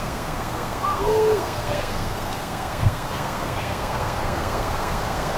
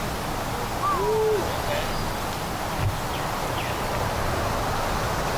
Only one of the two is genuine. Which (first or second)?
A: second